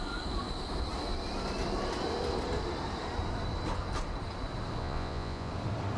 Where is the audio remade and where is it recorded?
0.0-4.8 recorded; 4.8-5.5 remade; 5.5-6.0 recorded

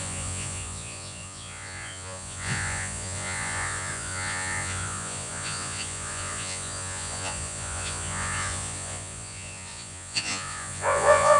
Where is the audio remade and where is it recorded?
0.0-11.4 remade

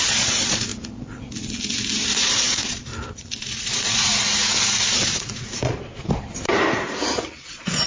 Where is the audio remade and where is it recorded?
0.0-0.7 remade; 0.7-2.2 recorded; 2.2-2.9 remade; 2.9-3.4 recorded; 3.4-4.1 remade; 4.1-4.8 recorded; 4.8-6.0 remade; 6.0-7.5 recorded; 7.5-7.9 remade

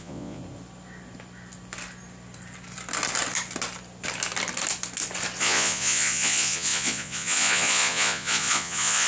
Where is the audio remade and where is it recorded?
0.0-0.4 remade; 0.4-5.4 recorded; 5.4-9.1 remade